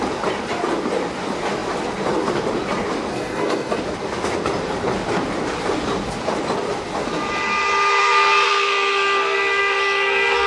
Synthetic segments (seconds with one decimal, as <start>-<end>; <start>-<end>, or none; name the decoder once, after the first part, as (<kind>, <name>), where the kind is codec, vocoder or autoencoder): 3.1-3.8 (codec, SNAC); 8.0-10.5

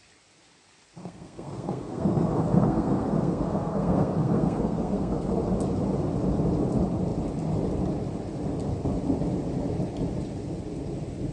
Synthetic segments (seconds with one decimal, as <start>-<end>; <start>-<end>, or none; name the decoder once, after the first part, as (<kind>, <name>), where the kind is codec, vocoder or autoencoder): 1.0-5.3 (codec, SNAC)

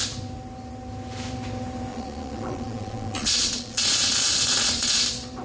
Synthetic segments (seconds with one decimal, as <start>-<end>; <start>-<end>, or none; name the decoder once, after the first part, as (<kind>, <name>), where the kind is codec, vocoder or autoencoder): 1.9-5.0 (vocoder, Vocos)

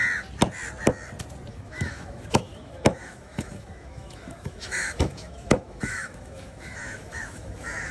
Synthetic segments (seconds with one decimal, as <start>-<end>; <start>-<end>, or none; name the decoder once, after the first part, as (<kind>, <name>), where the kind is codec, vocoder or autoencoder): 1.5-7.9 (autoencoder, DAC-VAE)

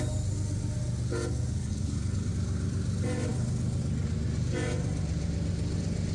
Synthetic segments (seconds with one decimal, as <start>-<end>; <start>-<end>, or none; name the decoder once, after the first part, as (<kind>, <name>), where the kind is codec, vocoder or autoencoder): 1.6-2.3 (codec, HILCodec)

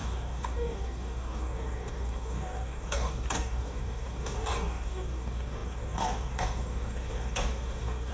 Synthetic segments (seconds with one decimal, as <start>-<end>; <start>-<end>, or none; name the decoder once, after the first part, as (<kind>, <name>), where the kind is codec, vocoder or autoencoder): 0.0-8.1 (codec, DAC)

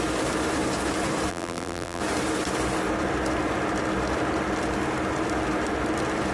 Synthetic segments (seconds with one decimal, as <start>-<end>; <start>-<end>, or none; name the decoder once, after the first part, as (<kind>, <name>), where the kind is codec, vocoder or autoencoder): 1.3-2.0 (vocoder, BigVGAN v2)